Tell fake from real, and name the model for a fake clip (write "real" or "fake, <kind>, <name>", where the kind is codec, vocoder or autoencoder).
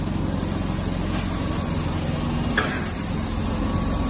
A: real